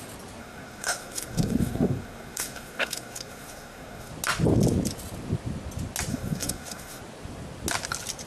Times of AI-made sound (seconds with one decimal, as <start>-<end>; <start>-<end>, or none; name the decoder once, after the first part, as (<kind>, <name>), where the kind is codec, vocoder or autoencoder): 0.4-4.1 (codec, SNAC); 6.1-7.0